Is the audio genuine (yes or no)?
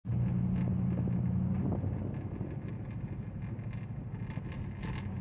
yes